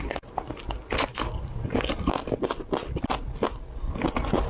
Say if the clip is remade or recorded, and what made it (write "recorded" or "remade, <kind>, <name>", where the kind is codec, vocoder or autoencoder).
recorded